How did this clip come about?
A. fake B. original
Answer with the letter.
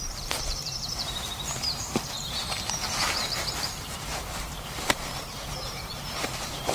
A